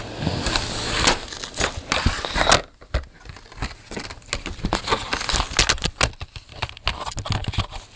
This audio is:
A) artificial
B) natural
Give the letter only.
B